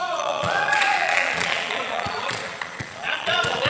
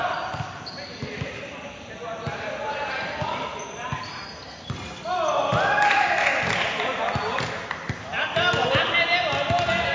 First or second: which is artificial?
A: first